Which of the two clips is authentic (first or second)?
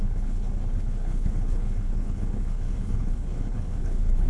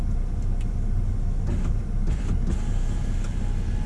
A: second